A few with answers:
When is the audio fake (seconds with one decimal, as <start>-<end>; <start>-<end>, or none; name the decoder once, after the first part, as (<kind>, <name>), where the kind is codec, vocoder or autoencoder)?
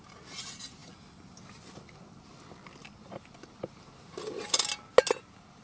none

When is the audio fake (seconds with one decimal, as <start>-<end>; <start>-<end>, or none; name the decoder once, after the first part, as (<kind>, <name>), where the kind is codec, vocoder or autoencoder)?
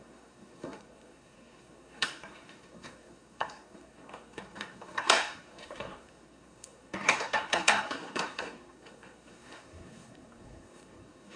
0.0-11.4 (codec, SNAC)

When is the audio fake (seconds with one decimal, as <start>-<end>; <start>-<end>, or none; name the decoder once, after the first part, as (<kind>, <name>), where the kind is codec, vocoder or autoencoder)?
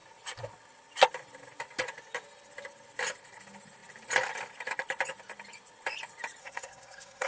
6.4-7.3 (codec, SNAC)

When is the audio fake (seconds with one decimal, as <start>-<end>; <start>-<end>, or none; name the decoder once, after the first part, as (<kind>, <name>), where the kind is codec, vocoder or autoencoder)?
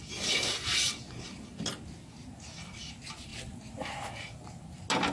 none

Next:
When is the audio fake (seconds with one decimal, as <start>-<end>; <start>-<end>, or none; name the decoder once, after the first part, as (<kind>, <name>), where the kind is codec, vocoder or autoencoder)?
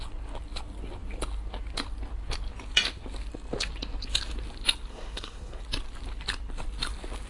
4.9-5.6 (codec, SNAC)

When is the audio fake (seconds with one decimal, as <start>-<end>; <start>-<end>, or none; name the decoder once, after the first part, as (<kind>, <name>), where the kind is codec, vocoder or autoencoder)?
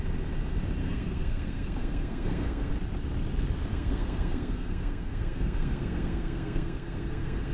0.8-2.7 (codec, SNAC); 3.7-7.5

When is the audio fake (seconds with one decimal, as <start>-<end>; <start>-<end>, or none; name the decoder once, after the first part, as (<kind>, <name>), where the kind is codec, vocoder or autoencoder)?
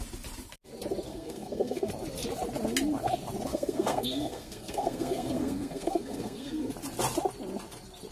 1.1-1.9 (codec, SNAC); 3.5-6.7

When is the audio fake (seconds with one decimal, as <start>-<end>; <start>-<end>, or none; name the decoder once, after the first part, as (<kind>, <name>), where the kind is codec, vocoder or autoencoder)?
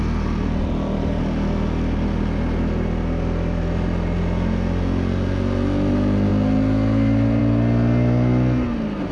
none